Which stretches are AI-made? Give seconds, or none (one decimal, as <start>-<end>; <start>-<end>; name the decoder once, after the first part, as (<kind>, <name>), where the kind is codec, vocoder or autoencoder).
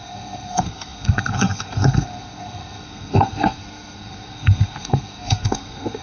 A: 0.0-6.0 (codec, SNAC)